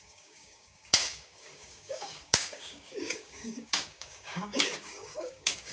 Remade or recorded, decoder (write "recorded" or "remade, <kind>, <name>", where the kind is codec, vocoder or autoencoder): remade, codec, DAC